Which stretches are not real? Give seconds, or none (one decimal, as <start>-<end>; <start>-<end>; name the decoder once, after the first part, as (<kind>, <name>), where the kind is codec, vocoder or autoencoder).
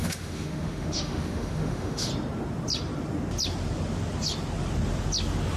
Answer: 0.0-2.1 (autoencoder, DAC-VAE)